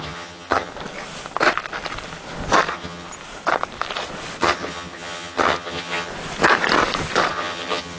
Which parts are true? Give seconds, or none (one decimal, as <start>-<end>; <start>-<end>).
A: 0.7-2.7; 3.1-4.4; 6.1-7.3